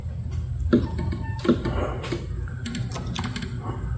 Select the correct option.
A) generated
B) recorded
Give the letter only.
B